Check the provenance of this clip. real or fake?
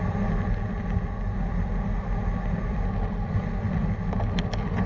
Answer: real